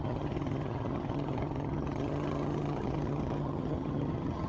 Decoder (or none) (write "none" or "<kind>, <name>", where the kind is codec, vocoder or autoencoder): vocoder, HiFi-GAN